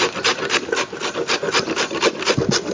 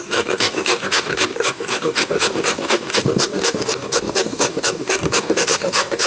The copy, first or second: second